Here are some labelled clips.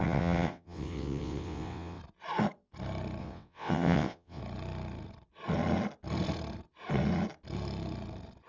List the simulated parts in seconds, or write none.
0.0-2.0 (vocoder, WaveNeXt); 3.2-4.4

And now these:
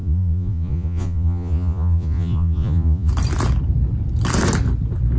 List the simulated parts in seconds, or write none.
0.0-3.1 (vocoder, Vocos)

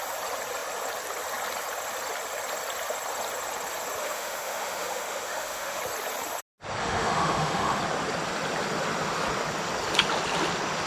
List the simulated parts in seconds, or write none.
4.0-5.8 (autoencoder, DAC-VAE); 6.8-7.8

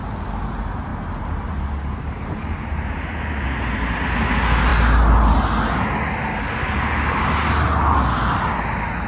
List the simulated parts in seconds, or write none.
none

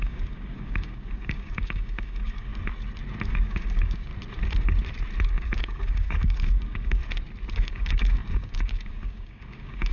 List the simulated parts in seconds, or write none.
0.0-2.5 (codec, DAC); 3.3-4.1; 5.2-7.0; 7.5-9.9

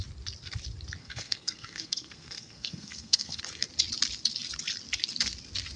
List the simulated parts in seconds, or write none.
1.0-3.4 (codec, SNAC)